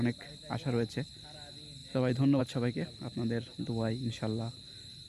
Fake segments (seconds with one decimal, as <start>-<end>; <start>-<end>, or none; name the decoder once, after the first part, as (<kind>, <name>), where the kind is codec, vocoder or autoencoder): 1.8-2.4 (vocoder, BigVGAN v2)